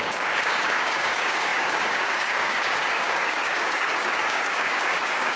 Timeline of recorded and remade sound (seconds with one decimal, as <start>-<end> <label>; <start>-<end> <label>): 0.0-5.4 remade